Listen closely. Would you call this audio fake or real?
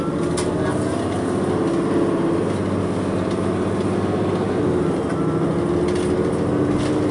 real